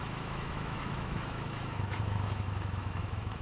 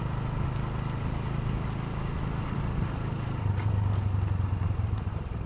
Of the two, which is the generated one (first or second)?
first